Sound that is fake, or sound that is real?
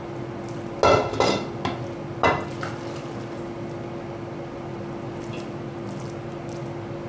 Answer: real